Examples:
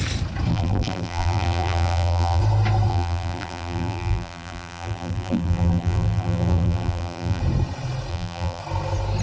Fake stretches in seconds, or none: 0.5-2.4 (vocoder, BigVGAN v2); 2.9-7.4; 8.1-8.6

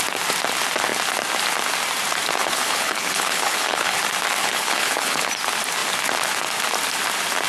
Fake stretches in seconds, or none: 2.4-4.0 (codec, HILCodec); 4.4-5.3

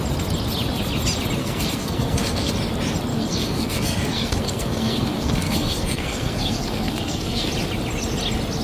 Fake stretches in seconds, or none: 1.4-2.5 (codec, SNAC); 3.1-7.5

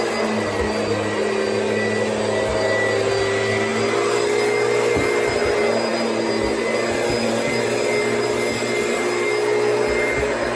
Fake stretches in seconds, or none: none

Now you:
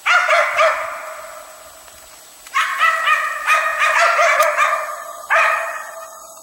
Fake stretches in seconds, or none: none

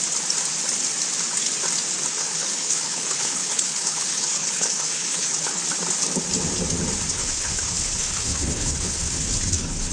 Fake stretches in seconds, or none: 2.1-5.6 (codec, HILCodec); 7.1-9.9

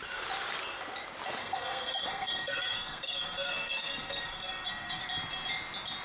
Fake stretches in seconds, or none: 1.4-5.0 (codec, SNAC)